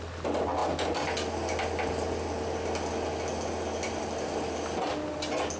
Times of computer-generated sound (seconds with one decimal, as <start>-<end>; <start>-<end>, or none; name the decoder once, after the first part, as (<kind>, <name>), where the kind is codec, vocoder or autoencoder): none